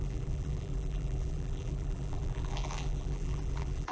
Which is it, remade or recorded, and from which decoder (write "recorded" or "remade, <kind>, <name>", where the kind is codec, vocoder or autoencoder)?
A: remade, vocoder, BigVGAN v2